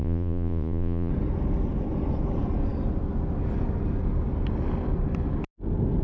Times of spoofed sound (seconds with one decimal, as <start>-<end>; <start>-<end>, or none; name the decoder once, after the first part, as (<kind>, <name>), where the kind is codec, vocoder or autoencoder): 0.0-1.1 (vocoder, Vocos)